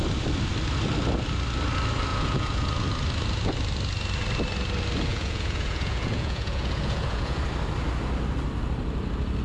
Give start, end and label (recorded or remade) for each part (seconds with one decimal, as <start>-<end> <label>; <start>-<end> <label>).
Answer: 0.0-2.1 recorded; 2.1-2.7 remade; 2.7-5.1 recorded; 5.1-7.4 remade; 7.4-9.4 recorded